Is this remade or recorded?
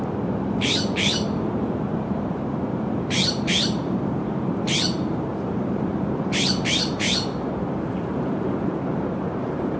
remade